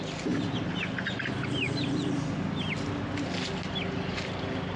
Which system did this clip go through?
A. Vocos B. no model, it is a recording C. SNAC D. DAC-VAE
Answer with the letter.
B